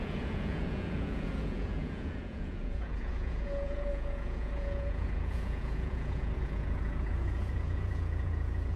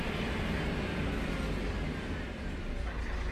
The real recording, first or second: second